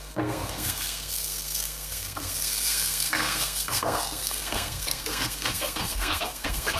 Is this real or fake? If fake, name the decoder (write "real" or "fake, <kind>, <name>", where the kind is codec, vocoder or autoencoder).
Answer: fake, codec, SNAC